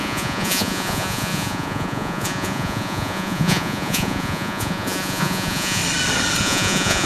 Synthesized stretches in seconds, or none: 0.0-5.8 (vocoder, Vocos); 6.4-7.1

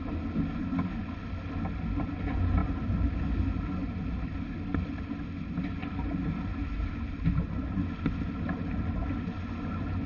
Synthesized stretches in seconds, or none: none

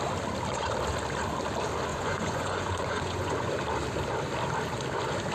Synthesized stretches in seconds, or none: 1.9-3.5 (vocoder, Vocos)